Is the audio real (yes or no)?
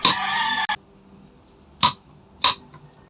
yes